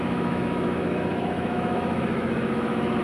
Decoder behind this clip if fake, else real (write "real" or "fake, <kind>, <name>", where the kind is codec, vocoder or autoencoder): fake, autoencoder, DAC-VAE